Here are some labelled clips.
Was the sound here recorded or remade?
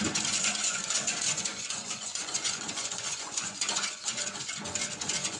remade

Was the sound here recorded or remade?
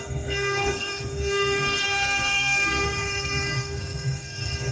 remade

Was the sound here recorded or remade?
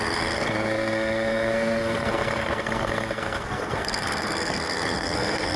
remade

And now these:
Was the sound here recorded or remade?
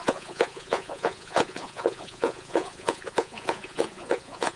remade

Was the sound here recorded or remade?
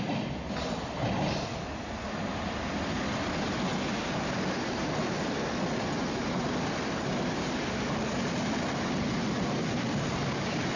recorded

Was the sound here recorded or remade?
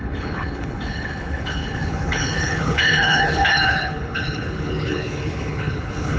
remade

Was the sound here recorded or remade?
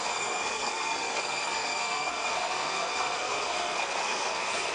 remade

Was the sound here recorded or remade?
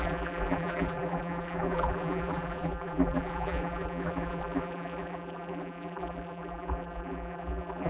remade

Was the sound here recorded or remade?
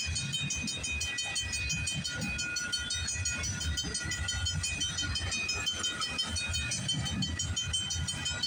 recorded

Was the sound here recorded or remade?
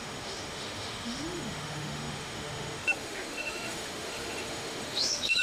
remade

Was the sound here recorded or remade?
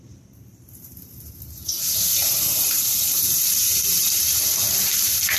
remade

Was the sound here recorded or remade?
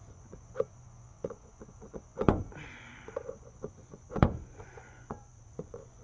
remade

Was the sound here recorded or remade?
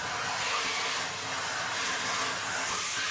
recorded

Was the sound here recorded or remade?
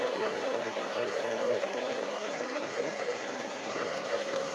remade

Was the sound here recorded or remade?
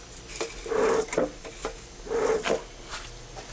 recorded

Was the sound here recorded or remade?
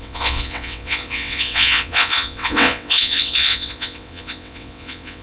remade